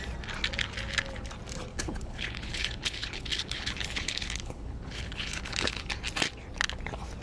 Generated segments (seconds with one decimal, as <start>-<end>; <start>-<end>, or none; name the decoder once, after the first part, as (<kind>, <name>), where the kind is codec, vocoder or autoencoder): 1.7-5.9 (codec, HILCodec)